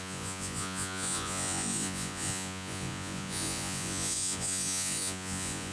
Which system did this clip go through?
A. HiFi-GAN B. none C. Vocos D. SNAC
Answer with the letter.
C